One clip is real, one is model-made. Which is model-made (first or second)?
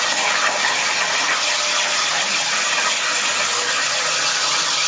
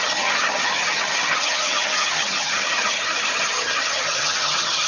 second